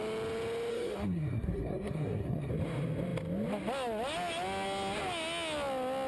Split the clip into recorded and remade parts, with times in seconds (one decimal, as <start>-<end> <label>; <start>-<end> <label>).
0.0-0.7 recorded; 0.7-2.5 remade; 2.5-6.1 recorded

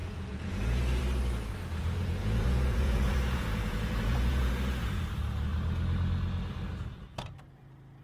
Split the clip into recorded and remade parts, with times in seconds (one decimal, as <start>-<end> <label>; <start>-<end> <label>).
0.0-1.0 remade; 1.0-1.8 recorded; 1.8-4.5 remade; 4.5-8.0 recorded